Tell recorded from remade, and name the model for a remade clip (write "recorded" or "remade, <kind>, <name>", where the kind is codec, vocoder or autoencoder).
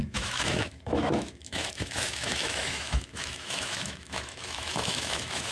remade, autoencoder, DAC-VAE